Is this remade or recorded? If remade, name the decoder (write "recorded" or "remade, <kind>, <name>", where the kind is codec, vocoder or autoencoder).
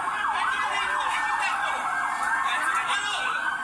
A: recorded